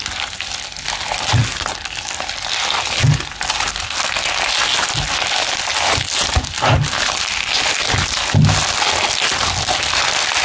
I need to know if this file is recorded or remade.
recorded